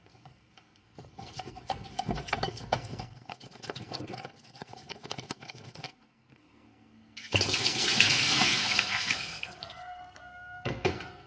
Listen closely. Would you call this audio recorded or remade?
remade